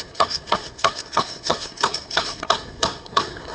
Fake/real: fake